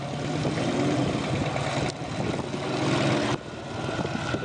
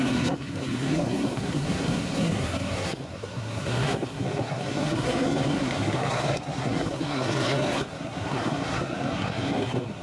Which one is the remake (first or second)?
second